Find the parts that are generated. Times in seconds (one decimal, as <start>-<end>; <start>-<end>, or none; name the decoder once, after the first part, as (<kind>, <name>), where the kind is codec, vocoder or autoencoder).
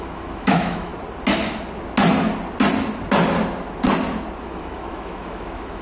0.0-0.9 (autoencoder, DAC-VAE); 4.4-5.8